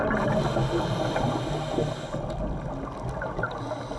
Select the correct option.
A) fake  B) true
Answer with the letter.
B